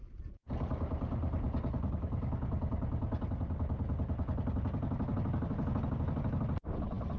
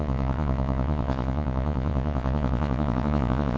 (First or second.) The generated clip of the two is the second